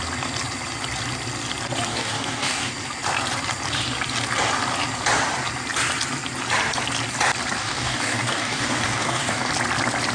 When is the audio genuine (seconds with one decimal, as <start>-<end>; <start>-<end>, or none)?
0.0-1.9; 2.7-7.6; 9.5-10.1